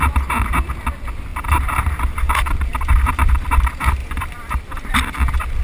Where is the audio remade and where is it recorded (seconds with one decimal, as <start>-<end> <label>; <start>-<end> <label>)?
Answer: 0.0-1.3 recorded; 1.3-2.5 remade; 2.5-4.0 recorded; 4.0-4.5 remade; 4.5-5.6 recorded